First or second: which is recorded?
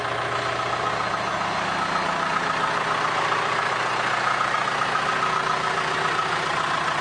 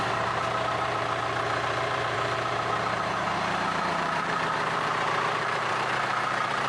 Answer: first